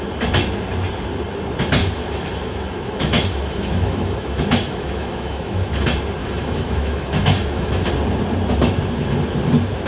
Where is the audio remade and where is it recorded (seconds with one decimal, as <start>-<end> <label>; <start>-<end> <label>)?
0.0-1.8 recorded; 1.8-5.7 remade; 5.7-6.2 recorded; 6.2-7.9 remade; 7.9-9.9 recorded

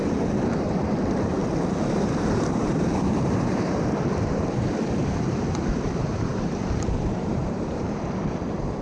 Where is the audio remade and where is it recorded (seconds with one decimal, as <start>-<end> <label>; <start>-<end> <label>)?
0.0-8.8 remade

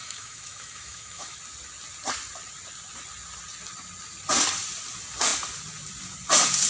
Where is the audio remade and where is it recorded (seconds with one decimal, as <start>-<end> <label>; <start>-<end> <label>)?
0.0-1.4 remade; 1.4-6.7 recorded

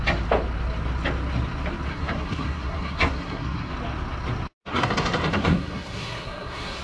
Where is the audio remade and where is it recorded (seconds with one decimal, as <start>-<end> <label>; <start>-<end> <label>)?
0.0-1.9 recorded; 1.9-3.7 remade; 3.7-4.7 recorded; 4.7-6.8 remade

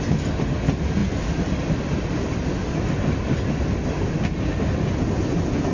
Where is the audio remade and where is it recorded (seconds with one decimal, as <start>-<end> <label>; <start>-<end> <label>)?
0.0-5.7 recorded